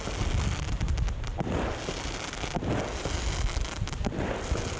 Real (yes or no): yes